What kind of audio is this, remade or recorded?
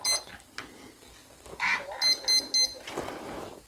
recorded